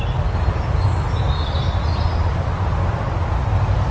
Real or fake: real